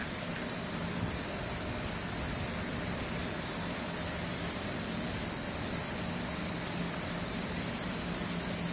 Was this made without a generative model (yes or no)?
yes